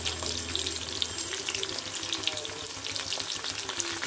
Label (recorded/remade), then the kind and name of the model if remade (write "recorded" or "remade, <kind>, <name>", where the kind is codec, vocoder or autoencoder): recorded